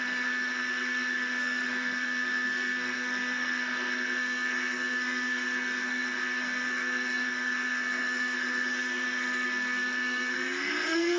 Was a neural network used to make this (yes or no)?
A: yes